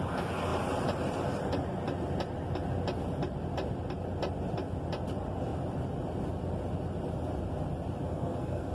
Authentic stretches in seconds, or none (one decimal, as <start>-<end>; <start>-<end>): 0.0-8.1